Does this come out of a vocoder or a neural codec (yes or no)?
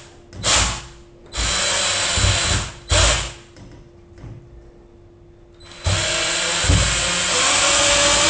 no